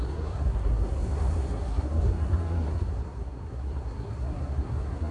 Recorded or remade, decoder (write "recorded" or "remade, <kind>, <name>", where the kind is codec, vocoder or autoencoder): remade, codec, SNAC